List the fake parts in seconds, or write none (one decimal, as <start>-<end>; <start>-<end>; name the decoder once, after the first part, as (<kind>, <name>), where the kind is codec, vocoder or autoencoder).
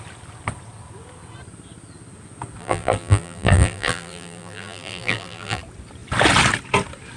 2.6-5.6 (vocoder, BigVGAN v2)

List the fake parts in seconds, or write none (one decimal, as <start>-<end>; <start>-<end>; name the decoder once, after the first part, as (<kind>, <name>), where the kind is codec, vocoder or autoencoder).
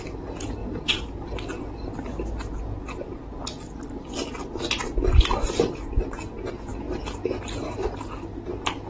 none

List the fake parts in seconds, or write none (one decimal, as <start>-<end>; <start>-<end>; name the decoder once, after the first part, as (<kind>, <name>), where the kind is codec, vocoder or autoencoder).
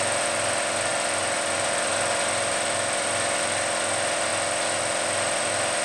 0.9-3.1 (vocoder, BigVGAN v2)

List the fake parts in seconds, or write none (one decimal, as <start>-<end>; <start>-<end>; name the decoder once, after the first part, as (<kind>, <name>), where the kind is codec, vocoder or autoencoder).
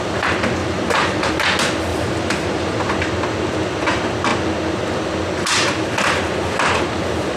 0.6-1.3 (vocoder, BigVGAN v2); 1.9-2.9